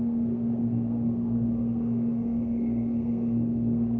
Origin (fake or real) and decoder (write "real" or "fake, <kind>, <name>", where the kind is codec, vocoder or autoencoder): fake, codec, SNAC